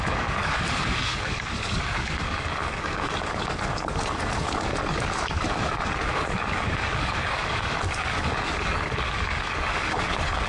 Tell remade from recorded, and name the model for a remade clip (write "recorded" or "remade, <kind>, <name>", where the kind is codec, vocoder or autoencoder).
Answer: remade, codec, DAC